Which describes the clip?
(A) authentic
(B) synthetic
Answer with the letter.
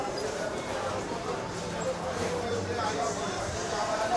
B